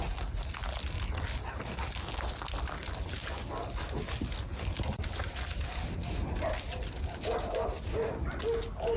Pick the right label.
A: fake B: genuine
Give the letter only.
B